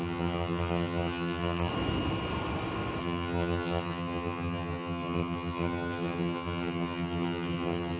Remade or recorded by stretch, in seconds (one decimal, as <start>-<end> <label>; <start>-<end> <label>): 0.0-1.7 remade; 1.7-3.0 recorded; 3.0-8.0 remade

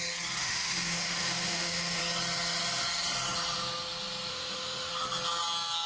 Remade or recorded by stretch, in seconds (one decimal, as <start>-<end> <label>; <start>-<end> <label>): 0.0-0.4 recorded; 0.4-2.0 remade; 2.0-4.3 recorded; 4.3-4.9 remade; 4.9-5.9 recorded

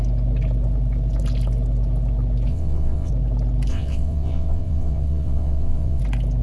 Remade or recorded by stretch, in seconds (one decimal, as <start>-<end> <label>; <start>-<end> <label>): 0.0-2.5 recorded; 2.5-3.1 remade; 3.1-3.7 recorded; 3.7-6.0 remade; 6.0-6.4 recorded

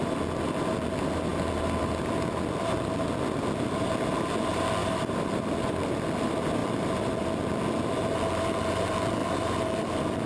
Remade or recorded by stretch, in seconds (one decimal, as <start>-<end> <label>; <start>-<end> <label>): 0.0-4.8 recorded; 4.8-5.7 remade; 5.7-9.2 recorded; 9.2-10.3 remade